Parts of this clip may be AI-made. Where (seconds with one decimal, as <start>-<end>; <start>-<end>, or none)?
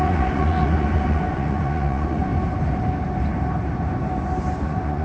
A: 0.0-2.3; 4.6-5.0